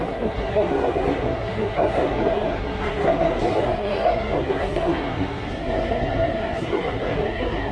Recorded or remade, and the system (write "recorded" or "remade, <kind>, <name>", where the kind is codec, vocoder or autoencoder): remade, codec, SNAC